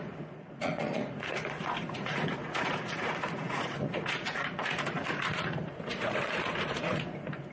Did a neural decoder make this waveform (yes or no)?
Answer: yes